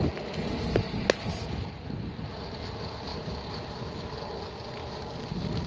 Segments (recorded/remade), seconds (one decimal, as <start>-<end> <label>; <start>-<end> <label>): 0.0-4.8 recorded; 4.8-5.7 remade